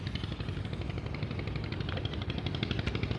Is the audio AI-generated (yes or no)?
no